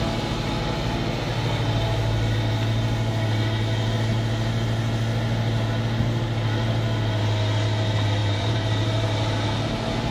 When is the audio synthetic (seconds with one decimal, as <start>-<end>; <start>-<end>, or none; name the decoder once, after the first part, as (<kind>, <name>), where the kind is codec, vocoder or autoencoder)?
8.2-9.6 (vocoder, BigVGAN v2)